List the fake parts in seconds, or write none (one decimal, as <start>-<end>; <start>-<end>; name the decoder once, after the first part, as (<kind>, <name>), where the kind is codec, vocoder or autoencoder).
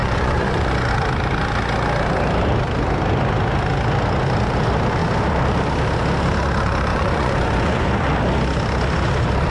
0.0-0.9 (vocoder, Vocos); 6.9-7.9